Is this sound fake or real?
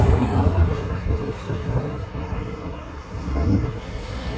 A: fake